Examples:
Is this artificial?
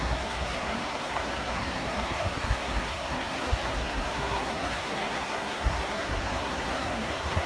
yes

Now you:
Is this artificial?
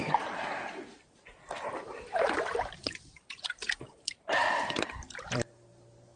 yes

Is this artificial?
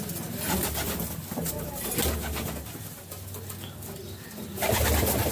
no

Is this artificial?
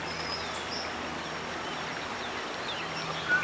no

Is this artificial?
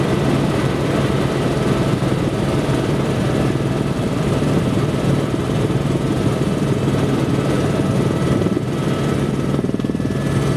yes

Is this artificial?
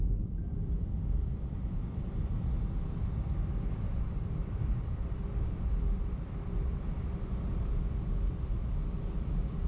yes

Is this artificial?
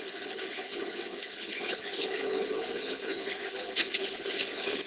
yes